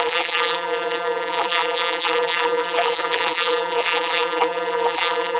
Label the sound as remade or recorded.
remade